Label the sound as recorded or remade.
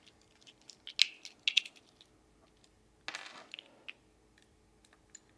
recorded